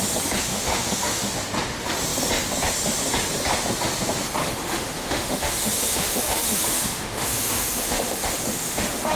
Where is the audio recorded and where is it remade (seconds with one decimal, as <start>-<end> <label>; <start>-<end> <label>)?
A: 0.0-0.5 recorded; 0.5-1.3 remade; 1.3-4.4 recorded; 4.4-9.1 remade